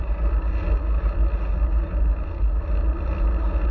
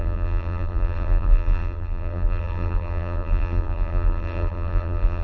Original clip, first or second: first